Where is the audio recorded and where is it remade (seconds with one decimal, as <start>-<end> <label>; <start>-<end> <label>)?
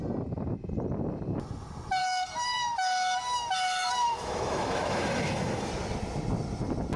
0.0-2.0 recorded; 2.0-5.7 remade; 5.7-7.0 recorded